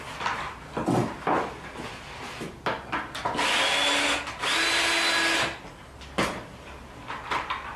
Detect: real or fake real